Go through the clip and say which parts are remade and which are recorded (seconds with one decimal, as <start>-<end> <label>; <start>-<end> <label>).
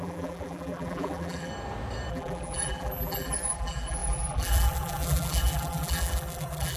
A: 0.0-1.5 remade; 1.5-2.1 recorded; 2.1-6.8 remade